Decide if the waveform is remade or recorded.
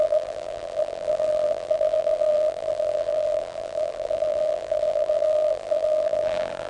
remade